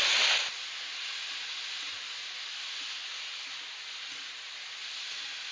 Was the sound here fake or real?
real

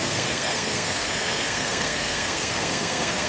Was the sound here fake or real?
fake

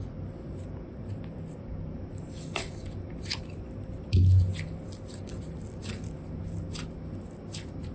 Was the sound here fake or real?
fake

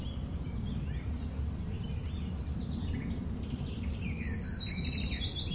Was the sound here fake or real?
real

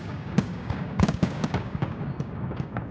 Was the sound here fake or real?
fake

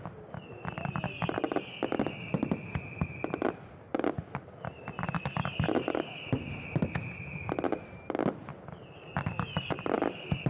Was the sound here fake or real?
real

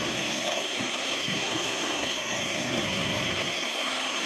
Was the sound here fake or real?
fake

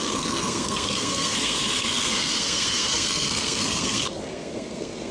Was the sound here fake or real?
fake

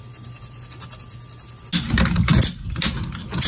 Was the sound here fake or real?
real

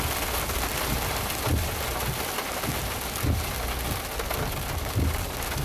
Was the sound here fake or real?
real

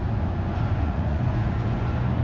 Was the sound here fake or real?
fake